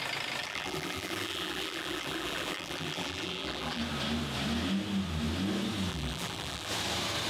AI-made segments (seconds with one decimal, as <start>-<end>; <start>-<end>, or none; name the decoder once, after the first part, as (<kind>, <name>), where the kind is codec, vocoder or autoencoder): 0.4-3.8 (vocoder, BigVGAN v2); 5.9-6.7